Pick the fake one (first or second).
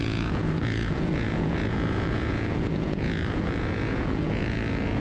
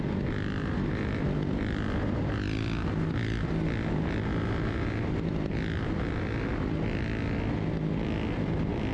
first